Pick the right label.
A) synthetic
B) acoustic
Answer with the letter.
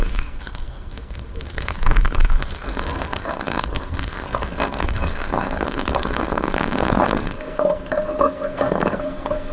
A